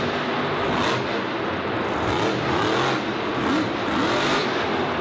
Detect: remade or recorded recorded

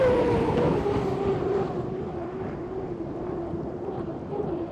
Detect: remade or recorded recorded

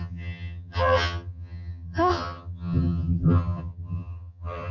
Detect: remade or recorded remade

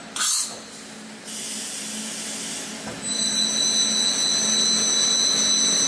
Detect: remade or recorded recorded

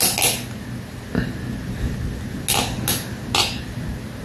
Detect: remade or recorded recorded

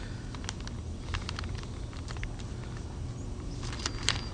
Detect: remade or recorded recorded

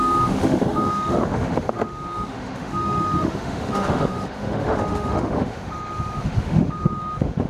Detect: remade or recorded remade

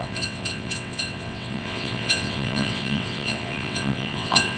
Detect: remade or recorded remade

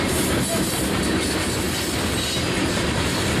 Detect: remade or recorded recorded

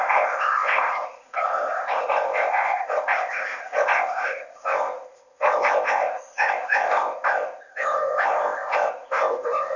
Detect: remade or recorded remade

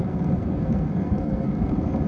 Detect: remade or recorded remade